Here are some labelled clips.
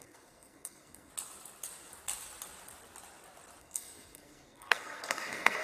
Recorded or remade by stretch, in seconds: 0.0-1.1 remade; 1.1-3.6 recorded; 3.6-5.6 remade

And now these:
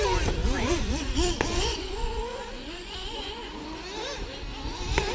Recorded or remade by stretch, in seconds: 0.0-0.4 recorded; 0.4-3.5 remade; 3.5-5.1 recorded

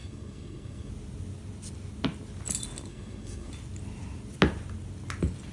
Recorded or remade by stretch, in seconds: 0.0-0.9 remade; 0.9-2.9 recorded; 2.9-3.5 remade; 3.5-5.5 recorded

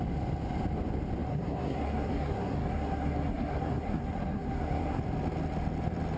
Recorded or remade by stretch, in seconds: 0.0-1.3 recorded; 1.3-5.0 remade; 5.0-6.2 recorded

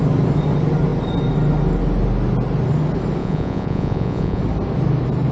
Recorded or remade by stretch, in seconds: 0.0-3.2 recorded; 3.2-4.4 remade; 4.4-5.3 recorded

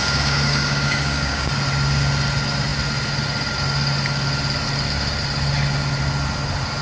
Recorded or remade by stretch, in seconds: 0.0-1.5 remade; 1.5-6.8 recorded

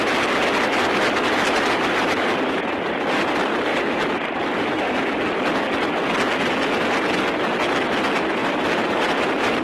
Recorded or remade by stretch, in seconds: 0.0-3.7 recorded; 3.7-4.9 remade; 4.9-8.4 recorded; 8.4-9.6 remade

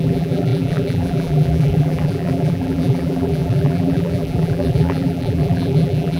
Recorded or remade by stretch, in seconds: 0.0-6.2 remade